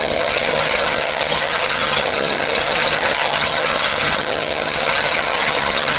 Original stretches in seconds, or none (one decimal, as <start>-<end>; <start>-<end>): none